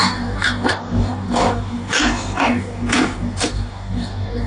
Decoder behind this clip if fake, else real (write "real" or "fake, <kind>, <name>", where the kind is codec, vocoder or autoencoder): fake, codec, DAC